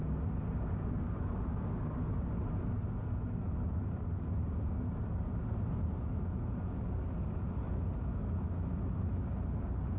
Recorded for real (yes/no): yes